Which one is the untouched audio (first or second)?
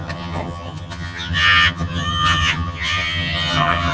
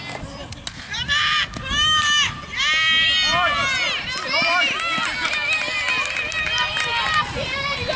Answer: second